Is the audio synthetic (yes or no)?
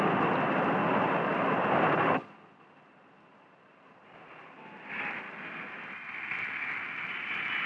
no